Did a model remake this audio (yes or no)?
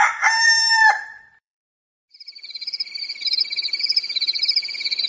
yes